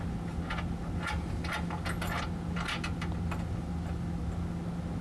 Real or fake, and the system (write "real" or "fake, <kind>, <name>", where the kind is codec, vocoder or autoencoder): real